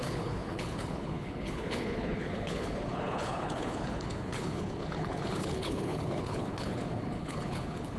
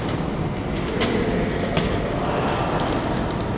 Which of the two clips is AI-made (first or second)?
first